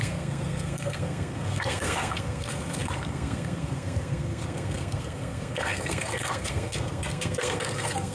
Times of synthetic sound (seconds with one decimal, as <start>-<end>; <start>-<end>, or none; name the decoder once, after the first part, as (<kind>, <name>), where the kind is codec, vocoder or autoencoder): 0.0-8.1 (codec, SNAC)